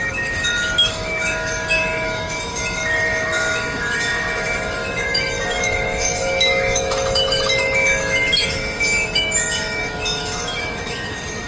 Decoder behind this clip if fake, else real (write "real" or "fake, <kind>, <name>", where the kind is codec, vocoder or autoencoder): fake, autoencoder, DAC-VAE